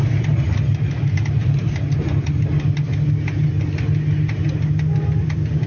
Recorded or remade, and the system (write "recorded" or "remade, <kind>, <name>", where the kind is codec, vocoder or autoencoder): recorded